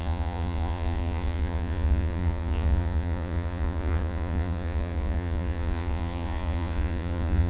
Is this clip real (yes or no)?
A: no